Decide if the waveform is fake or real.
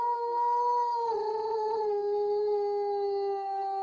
real